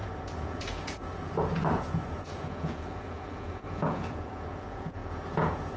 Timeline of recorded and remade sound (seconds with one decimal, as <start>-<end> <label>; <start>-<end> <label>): 0.0-5.8 remade